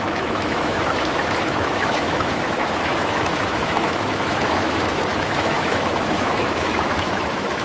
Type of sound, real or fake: fake